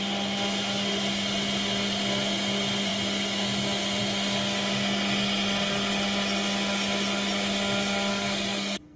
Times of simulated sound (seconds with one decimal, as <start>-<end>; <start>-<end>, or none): 8.1-9.0